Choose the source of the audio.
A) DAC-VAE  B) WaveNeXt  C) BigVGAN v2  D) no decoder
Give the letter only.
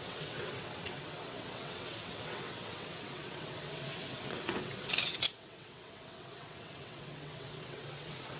B